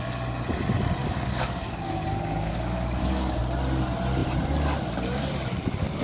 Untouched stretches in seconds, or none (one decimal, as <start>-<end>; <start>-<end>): 0.0-1.0; 3.4-6.0